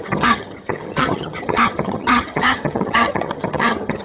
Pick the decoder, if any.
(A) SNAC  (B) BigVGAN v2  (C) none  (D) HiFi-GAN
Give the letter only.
D